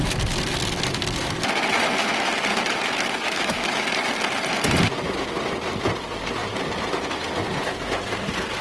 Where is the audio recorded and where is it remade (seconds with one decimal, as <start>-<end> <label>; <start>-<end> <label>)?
0.0-3.2 recorded; 3.2-3.8 remade; 3.8-8.6 recorded